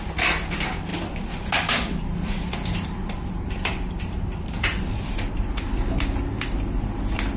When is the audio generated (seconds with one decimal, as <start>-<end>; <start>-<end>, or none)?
0.9-5.3